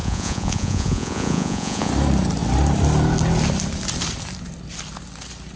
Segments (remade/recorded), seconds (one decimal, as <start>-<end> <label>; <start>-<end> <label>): 0.0-1.9 remade; 1.9-5.6 recorded